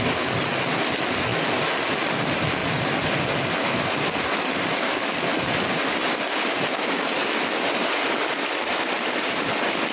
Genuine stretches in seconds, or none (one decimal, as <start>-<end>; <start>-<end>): 0.0-9.9